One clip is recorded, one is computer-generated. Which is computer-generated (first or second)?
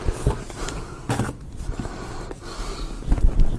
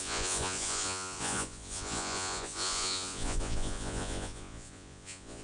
second